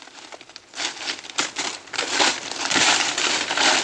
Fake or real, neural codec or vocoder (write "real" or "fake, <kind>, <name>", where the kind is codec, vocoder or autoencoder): real